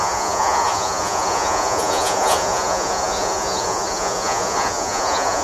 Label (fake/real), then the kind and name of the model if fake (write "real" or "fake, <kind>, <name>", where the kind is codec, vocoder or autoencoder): fake, vocoder, Vocos